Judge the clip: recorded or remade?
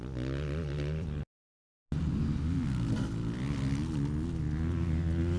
recorded